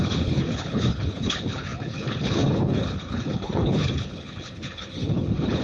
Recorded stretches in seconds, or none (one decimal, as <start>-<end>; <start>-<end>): none